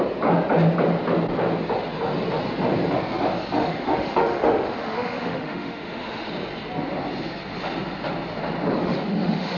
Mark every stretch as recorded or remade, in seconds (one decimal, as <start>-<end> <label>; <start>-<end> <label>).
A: 0.0-3.6 recorded; 3.6-6.3 remade; 6.3-8.8 recorded; 8.8-9.6 remade